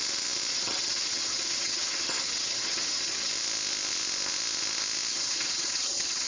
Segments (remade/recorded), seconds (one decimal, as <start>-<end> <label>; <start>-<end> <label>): 0.0-0.5 recorded; 0.5-3.3 remade; 3.3-5.1 recorded; 5.1-6.3 remade